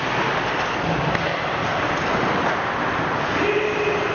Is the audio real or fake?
real